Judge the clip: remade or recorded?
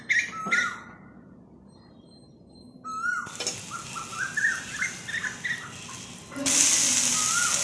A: recorded